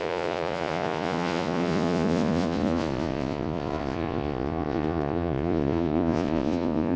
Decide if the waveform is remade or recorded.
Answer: remade